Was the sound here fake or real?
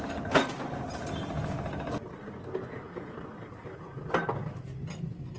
real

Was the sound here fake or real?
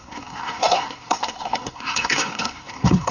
fake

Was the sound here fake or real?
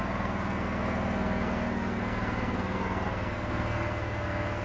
fake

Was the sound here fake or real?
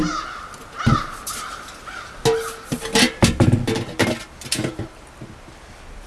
real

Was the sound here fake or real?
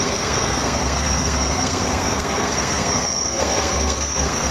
fake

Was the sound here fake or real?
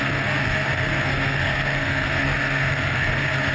fake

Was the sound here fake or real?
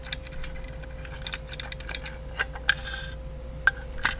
real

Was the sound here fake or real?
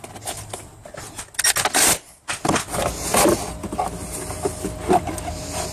real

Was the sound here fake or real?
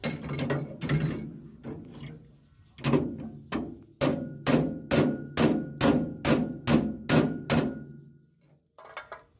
real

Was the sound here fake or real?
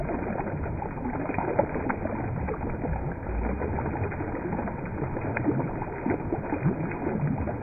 real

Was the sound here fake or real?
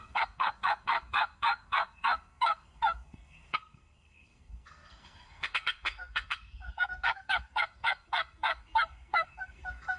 fake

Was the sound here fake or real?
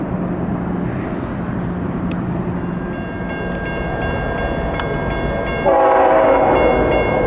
real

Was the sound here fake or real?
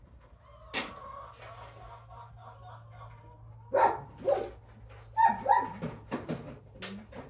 real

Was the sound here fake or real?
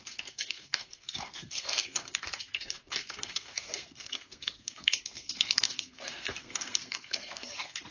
fake